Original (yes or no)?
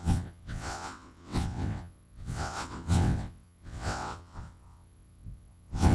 no